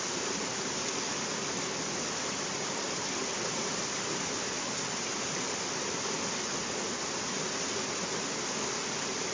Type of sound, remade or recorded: recorded